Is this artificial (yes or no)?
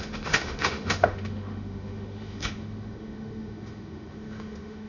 yes